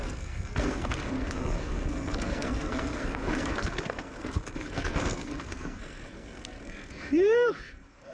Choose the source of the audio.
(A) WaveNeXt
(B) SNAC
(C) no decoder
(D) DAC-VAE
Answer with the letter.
B